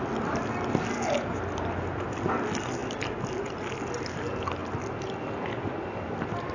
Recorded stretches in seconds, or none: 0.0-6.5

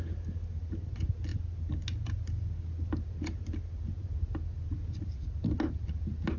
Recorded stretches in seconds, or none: 0.0-6.4

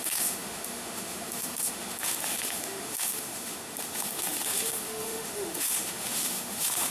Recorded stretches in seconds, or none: none

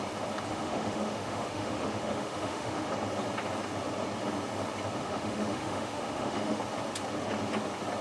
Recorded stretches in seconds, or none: 0.0-0.5; 2.9-5.0; 6.6-8.0

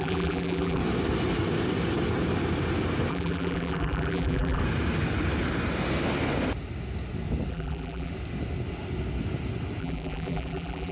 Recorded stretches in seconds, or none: 0.8-3.1; 4.6-7.5; 8.1-9.8